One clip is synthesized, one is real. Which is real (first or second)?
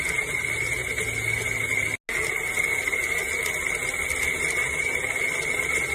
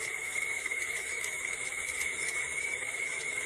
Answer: first